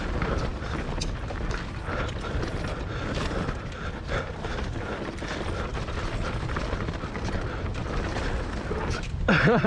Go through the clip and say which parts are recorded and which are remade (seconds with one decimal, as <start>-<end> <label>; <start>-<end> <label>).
0.0-9.7 recorded